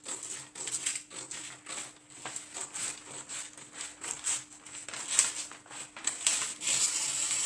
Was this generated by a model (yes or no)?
no